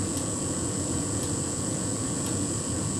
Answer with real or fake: fake